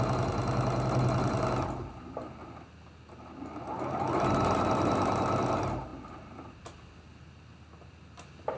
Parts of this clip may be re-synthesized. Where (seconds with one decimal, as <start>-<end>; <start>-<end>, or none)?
none